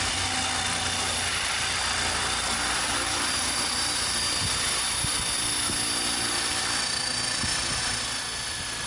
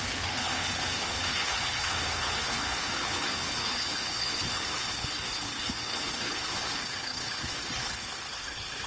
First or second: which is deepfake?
second